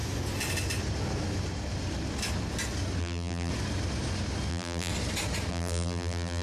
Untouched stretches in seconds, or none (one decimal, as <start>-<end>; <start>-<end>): 0.0-3.0; 3.5-4.5; 4.9-5.5